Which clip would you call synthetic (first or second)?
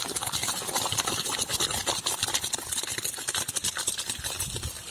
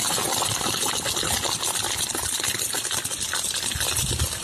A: first